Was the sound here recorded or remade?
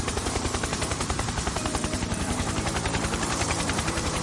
remade